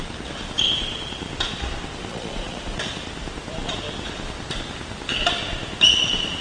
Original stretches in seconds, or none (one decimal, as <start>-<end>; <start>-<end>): 0.0-2.1; 2.8-6.4